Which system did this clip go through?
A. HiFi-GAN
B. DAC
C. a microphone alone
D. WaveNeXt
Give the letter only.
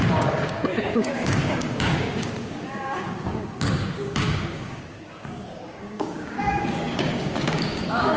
B